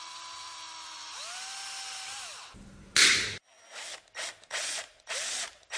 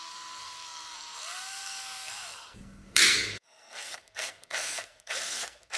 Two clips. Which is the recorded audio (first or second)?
first